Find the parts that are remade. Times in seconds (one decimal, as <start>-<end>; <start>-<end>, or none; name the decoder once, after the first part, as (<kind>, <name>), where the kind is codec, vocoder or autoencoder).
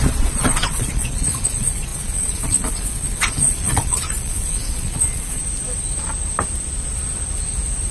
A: 0.0-5.4 (vocoder, Vocos)